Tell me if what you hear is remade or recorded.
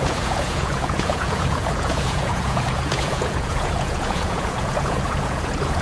remade